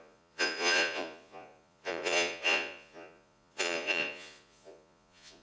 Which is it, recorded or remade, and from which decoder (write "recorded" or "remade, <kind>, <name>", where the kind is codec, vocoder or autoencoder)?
remade, vocoder, Vocos